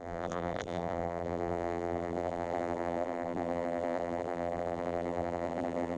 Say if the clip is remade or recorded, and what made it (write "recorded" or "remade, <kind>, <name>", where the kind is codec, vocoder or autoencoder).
remade, vocoder, BigVGAN v2